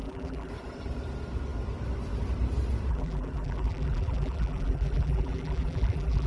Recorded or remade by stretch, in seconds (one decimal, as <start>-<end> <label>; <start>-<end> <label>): 0.0-0.5 remade; 0.5-2.9 recorded; 2.9-6.3 remade